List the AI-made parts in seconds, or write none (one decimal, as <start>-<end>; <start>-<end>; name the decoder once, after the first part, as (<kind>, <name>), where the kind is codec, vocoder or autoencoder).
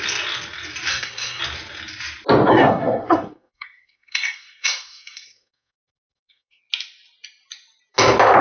0.9-1.4 (codec, SNAC); 2.5-6.6